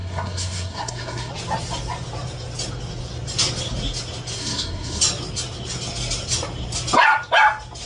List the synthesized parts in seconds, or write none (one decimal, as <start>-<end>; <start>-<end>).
0.0-1.3; 4.4-5.0